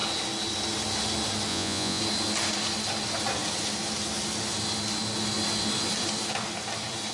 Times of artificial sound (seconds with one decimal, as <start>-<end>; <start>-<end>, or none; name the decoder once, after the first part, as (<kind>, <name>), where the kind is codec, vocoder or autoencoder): 1.5-2.0 (vocoder, Vocos)